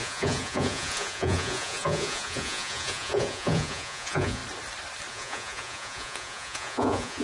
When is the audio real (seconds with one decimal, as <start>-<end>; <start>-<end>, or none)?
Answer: 4.4-5.1